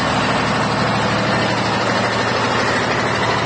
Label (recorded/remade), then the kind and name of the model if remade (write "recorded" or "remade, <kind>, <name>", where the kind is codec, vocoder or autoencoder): recorded